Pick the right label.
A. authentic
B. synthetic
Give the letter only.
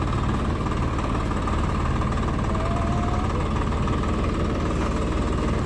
A